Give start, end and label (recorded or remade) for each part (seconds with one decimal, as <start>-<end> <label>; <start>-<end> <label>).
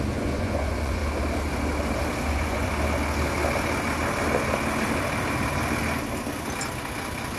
0.0-1.0 remade; 1.0-2.3 recorded; 2.3-2.7 remade; 2.7-7.4 recorded